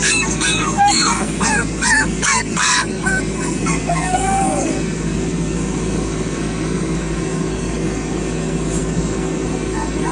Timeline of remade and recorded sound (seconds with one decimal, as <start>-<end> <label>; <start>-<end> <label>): 0.0-10.1 remade